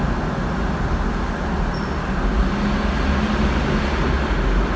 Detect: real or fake real